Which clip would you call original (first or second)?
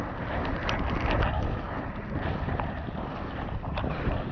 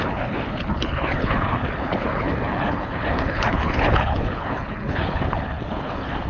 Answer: first